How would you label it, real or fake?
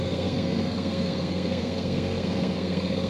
fake